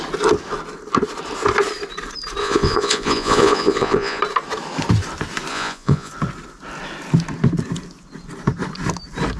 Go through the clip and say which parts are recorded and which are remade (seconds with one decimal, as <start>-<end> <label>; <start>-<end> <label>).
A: 0.0-2.4 recorded; 2.4-4.2 remade; 4.2-5.5 recorded; 5.5-6.1 remade; 6.1-9.4 recorded